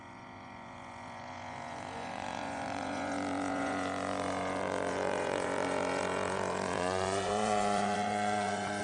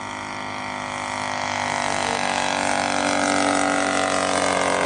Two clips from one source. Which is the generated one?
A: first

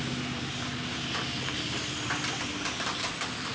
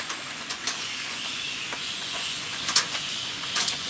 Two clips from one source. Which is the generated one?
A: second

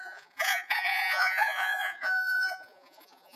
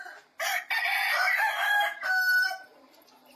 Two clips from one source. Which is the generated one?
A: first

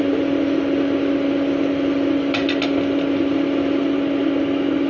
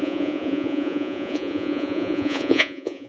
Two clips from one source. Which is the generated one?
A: second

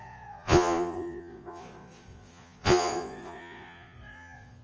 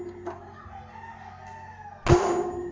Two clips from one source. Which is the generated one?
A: first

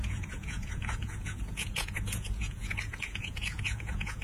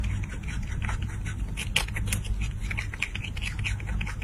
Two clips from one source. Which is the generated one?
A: first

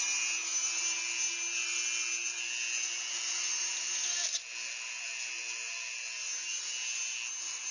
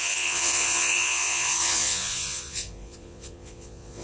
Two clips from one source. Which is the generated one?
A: second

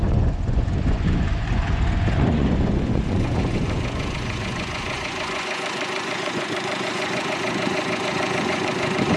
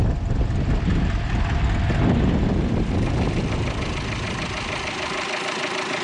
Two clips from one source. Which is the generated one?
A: first